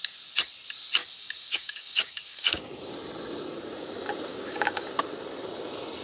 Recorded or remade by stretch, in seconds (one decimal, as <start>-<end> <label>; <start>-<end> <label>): 0.0-1.0 recorded; 1.0-2.8 remade; 2.8-4.3 recorded; 4.3-4.9 remade; 4.9-6.0 recorded

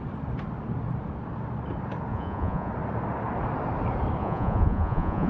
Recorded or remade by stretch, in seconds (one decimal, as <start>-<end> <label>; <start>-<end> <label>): 0.0-2.1 recorded; 2.1-2.7 remade; 2.7-4.2 recorded; 4.2-5.3 remade

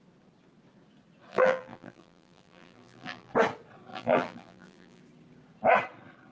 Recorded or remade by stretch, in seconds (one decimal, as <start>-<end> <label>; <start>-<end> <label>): 0.0-1.3 recorded; 1.3-3.3 remade; 3.3-3.9 recorded; 3.9-5.0 remade; 5.0-6.3 recorded

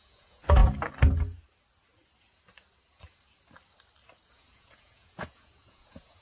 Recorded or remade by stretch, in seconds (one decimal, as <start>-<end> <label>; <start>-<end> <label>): 0.0-0.6 remade; 0.6-4.3 recorded; 4.3-6.2 remade

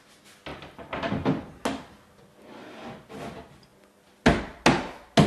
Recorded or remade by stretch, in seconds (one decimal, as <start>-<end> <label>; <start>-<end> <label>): 0.0-0.5 recorded; 0.5-1.5 remade; 1.5-2.6 recorded; 2.6-3.1 remade; 3.1-5.3 recorded

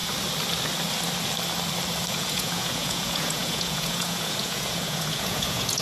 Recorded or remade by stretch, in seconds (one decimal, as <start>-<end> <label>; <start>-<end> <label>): 0.0-2.1 recorded; 2.1-5.8 remade

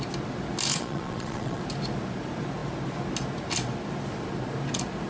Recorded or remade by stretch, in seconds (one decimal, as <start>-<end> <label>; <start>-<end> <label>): 0.0-0.7 recorded; 0.7-1.6 remade; 1.6-5.1 recorded